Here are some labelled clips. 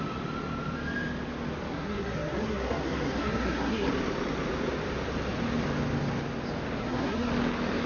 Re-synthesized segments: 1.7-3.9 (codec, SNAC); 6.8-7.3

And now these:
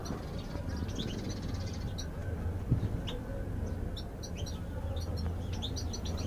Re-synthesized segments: none

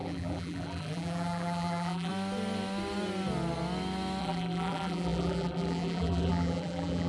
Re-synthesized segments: 0.0-2.1 (vocoder, BigVGAN v2); 4.2-7.1

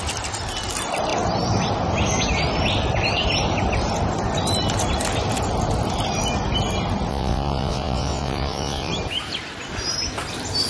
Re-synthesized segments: 7.1-8.9 (vocoder, WaveNeXt)

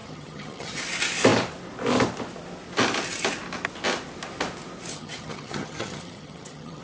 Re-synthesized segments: 0.0-0.8 (vocoder, HiFi-GAN); 4.9-6.8